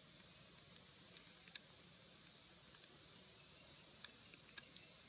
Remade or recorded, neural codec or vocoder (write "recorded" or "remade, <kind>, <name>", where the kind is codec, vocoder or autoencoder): recorded